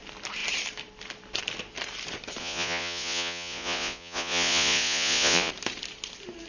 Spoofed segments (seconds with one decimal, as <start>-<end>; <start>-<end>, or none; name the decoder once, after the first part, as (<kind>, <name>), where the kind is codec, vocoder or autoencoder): 2.4-5.5 (vocoder, Vocos)